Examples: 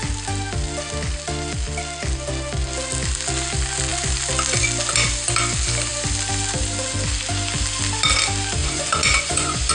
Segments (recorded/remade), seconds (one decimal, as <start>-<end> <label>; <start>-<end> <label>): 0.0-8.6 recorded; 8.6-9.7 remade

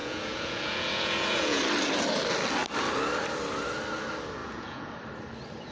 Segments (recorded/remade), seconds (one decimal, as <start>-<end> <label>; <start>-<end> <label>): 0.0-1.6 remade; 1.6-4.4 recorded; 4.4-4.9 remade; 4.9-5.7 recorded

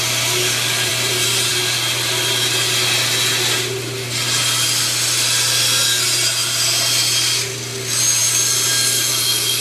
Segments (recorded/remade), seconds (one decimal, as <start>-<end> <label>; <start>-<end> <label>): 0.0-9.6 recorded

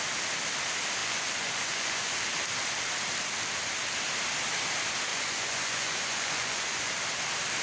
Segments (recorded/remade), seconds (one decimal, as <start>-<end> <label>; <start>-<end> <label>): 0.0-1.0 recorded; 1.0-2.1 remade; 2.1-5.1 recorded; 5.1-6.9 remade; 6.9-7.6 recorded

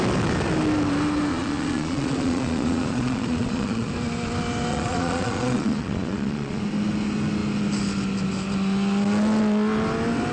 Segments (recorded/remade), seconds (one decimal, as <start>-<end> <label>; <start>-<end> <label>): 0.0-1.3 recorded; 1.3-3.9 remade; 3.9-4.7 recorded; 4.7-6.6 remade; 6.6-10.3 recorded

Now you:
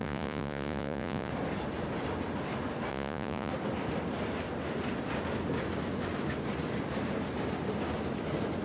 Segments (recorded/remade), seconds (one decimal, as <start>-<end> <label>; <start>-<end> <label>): 0.0-1.3 remade; 1.3-2.9 recorded; 2.9-3.5 remade; 3.5-8.6 recorded